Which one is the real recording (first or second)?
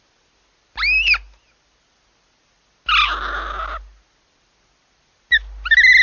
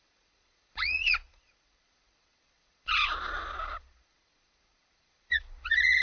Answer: first